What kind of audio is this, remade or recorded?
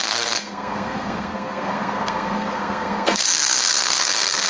remade